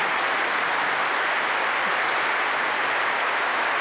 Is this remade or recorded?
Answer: recorded